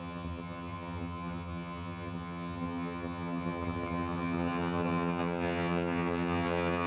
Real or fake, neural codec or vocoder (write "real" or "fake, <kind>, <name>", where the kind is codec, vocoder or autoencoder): fake, vocoder, HiFi-GAN